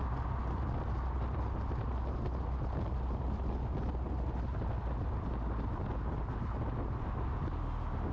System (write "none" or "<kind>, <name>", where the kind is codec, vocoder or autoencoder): none